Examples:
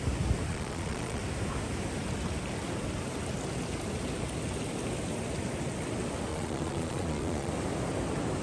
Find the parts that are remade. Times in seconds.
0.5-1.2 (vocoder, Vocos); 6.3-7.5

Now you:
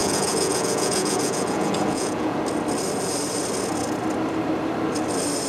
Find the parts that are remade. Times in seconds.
0.0-2.4 (vocoder, Vocos)

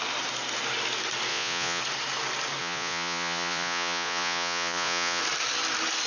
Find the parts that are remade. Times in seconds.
1.3-1.8 (vocoder, Vocos); 2.6-5.2

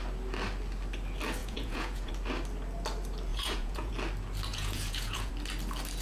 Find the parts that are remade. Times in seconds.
1.4-2.1 (vocoder, Vocos); 3.3-3.9; 4.5-5.3

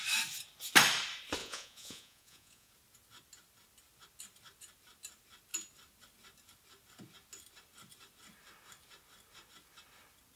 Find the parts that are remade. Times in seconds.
1.4-2.7 (vocoder, Vocos)

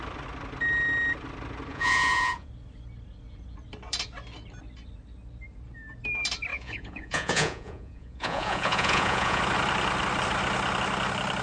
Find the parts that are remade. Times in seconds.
1.7-2.5 (vocoder, Vocos); 6.5-9.4